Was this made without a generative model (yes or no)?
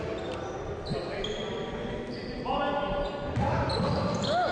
yes